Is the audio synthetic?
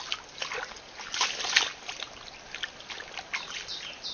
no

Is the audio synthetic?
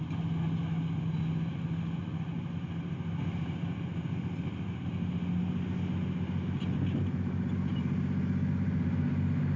no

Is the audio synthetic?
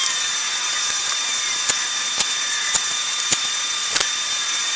yes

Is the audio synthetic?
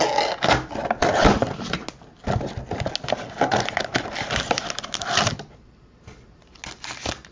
no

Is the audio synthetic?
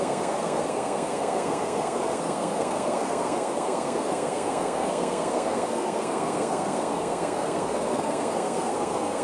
yes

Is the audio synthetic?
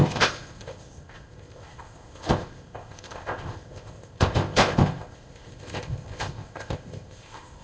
yes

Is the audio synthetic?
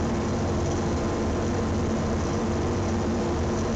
no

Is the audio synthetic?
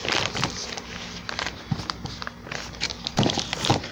no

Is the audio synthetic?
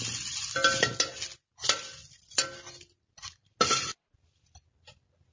no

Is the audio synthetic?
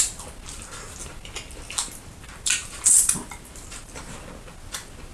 no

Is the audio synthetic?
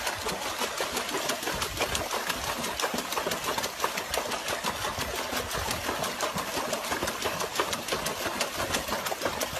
no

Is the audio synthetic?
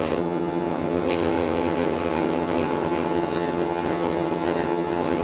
yes